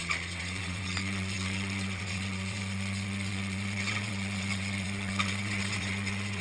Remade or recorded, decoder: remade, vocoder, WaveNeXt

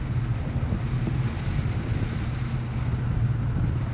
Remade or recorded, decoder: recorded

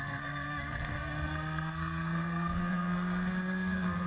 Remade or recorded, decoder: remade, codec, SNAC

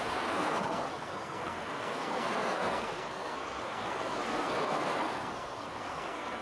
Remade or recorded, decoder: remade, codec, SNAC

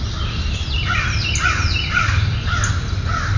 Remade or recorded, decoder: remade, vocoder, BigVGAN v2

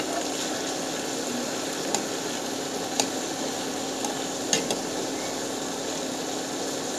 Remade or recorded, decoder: recorded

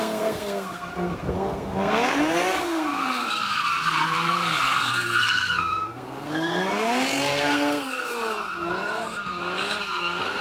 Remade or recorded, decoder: remade, codec, SNAC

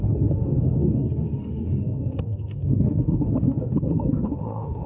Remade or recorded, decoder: remade, autoencoder, DAC-VAE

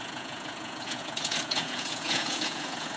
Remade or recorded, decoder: remade, vocoder, Vocos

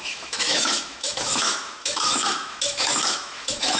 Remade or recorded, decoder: remade, autoencoder, DAC-VAE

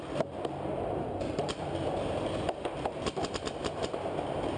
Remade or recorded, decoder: recorded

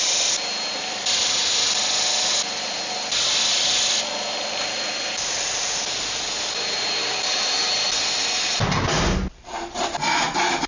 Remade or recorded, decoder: recorded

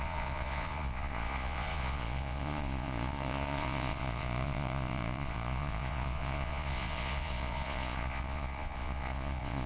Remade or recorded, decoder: remade, vocoder, Vocos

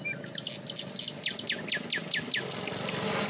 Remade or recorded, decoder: recorded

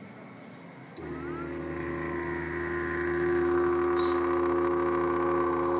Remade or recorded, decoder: recorded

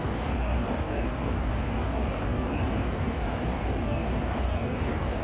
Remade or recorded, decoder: remade, codec, DAC